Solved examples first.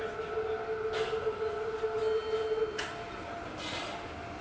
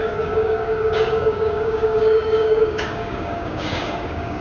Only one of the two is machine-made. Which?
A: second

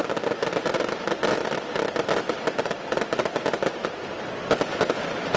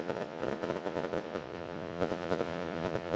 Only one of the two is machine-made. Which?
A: second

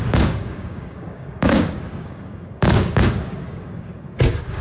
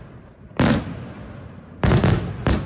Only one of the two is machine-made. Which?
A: first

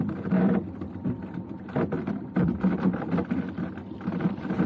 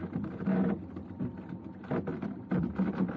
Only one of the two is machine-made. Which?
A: first